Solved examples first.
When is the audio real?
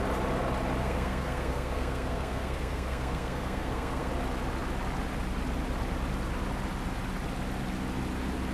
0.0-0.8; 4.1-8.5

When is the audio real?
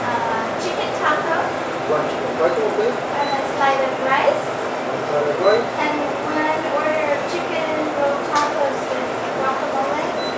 0.0-10.4